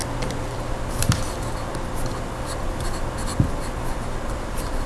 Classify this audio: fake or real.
real